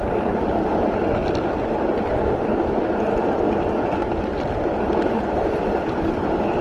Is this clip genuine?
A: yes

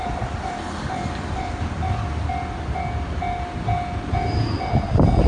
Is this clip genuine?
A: yes